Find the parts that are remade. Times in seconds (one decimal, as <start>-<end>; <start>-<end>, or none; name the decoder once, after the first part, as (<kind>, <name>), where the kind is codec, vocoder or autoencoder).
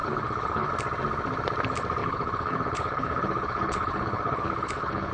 0.0-0.7 (codec, HILCodec); 2.0-5.1